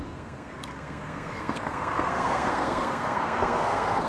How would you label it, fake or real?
fake